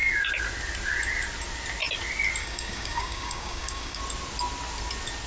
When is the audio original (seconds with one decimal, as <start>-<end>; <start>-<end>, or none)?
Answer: 0.0-2.4; 4.0-5.3